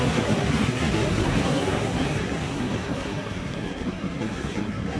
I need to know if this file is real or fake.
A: fake